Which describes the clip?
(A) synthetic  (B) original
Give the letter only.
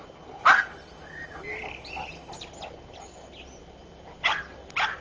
B